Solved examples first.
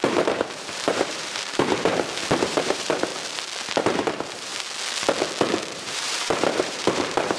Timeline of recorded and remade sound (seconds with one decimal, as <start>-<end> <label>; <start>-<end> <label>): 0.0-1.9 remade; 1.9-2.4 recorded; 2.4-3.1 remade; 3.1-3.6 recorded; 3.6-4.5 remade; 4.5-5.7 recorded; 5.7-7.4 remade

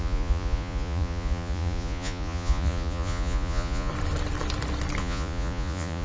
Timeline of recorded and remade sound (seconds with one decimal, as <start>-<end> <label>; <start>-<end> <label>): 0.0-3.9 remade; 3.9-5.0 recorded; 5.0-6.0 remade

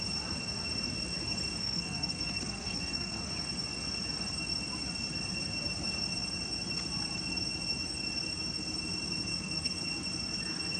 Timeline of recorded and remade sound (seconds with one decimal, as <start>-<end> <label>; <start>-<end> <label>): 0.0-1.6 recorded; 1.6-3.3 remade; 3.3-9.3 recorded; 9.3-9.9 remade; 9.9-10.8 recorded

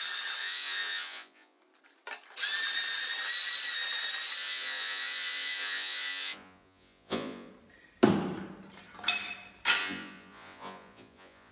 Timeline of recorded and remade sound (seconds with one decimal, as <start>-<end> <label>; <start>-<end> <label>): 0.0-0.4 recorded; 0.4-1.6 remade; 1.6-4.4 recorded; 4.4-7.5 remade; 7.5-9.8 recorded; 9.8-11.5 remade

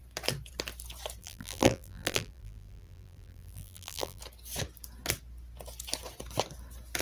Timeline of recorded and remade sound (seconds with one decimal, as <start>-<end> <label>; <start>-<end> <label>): 0.0-1.2 recorded; 1.2-4.2 remade; 4.2-7.0 recorded